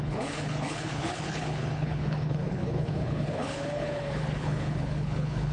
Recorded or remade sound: remade